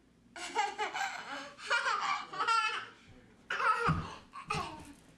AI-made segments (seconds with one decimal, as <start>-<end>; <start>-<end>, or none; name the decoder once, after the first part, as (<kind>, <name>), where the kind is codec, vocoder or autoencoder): none